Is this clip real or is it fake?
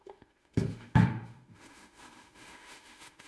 fake